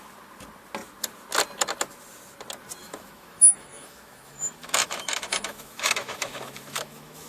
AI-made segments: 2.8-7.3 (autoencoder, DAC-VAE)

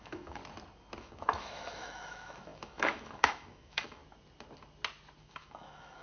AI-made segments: 0.0-0.4 (autoencoder, DAC-VAE); 1.0-4.0; 5.2-6.0

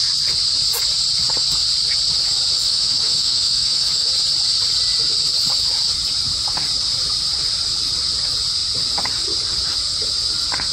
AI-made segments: 2.6-4.1 (autoencoder, DAC-VAE)